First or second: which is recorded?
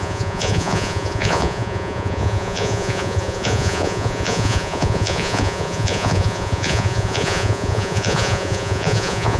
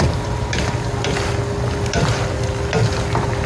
second